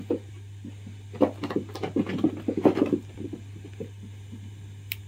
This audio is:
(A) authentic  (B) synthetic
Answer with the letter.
A